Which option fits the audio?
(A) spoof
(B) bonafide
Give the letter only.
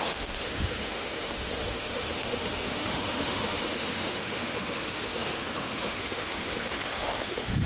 A